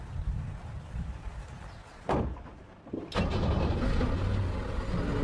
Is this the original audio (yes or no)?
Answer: yes